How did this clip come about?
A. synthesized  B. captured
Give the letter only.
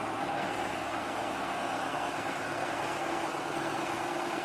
A